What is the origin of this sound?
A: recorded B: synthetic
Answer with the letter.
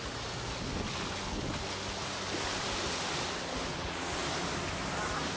A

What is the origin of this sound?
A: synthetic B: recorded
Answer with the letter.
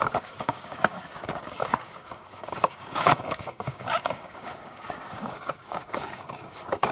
A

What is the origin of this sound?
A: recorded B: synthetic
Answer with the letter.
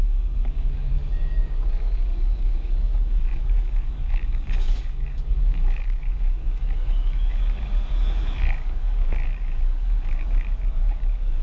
B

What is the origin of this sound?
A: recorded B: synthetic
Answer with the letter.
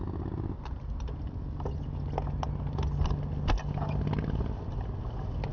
A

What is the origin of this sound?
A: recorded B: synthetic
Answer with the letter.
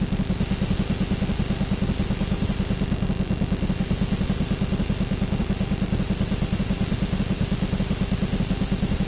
A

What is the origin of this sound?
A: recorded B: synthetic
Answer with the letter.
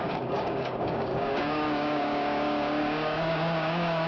B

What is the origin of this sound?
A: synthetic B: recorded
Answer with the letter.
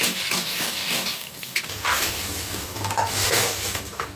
A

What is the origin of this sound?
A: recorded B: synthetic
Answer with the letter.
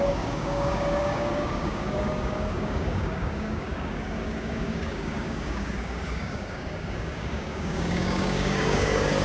B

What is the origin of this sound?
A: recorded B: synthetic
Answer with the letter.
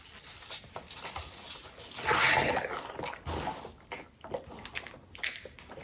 A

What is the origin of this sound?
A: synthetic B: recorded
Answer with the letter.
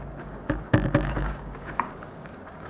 A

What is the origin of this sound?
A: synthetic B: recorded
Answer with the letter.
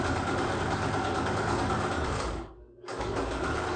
A